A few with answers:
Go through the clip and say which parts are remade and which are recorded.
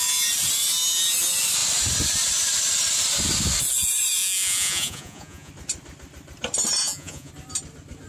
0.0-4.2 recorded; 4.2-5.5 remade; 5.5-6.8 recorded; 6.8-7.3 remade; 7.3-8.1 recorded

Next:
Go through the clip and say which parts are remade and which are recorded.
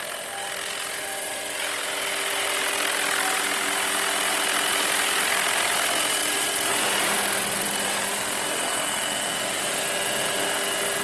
0.0-11.0 recorded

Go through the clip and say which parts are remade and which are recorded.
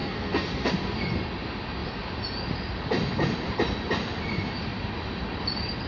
0.0-0.7 remade; 0.7-5.9 recorded